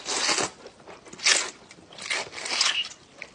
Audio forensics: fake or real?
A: real